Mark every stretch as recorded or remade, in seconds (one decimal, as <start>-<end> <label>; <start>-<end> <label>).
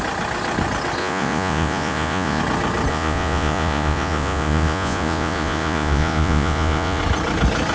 0.0-1.0 recorded; 1.0-2.4 remade; 2.4-2.9 recorded; 2.9-7.0 remade; 7.0-7.7 recorded